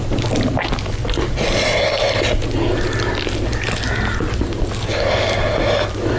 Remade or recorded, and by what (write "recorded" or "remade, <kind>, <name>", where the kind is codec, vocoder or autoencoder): recorded